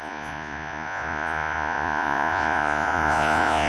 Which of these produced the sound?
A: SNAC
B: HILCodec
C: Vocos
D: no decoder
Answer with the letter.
C